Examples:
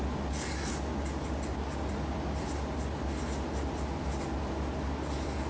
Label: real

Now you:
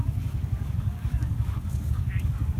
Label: fake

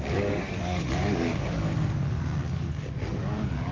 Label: fake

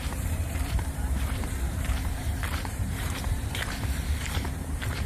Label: fake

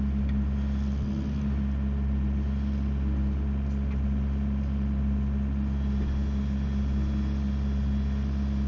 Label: real